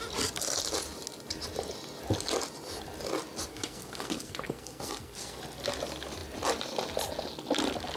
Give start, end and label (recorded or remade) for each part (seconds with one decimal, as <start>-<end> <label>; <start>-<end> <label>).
0.0-3.5 recorded; 3.5-5.4 remade; 5.4-8.0 recorded